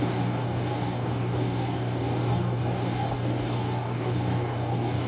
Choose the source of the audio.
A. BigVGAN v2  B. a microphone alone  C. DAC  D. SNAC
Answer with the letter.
C